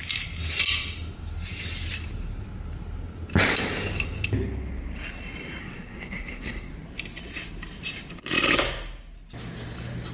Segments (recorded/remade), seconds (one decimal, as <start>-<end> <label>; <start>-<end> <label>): 0.0-5.6 recorded; 5.6-6.7 remade; 6.7-10.1 recorded